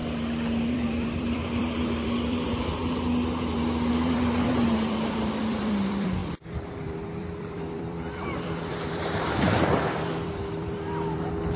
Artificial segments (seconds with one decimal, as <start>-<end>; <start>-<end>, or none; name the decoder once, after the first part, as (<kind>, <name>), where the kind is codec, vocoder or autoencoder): 0.7-2.8 (vocoder, BigVGAN v2); 3.9-11.6